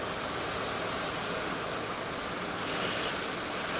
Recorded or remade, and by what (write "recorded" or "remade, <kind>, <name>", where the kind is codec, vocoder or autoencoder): recorded